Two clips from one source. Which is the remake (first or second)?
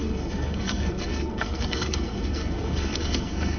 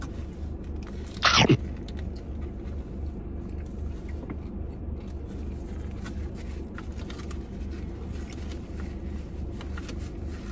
first